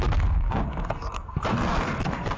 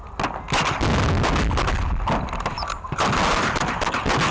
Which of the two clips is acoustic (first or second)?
second